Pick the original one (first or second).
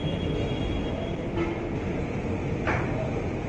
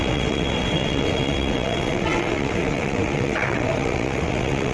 first